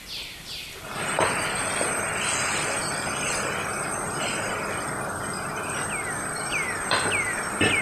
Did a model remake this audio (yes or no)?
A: no